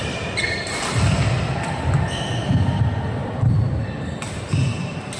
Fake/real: fake